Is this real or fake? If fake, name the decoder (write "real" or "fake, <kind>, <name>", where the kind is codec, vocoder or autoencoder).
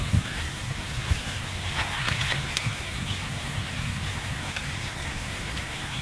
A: fake, codec, SNAC